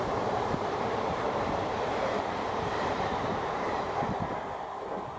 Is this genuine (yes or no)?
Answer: no